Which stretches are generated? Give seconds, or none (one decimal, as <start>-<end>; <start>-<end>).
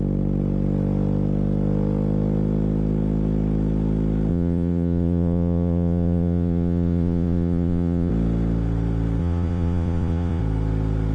4.3-8.1; 9.2-10.4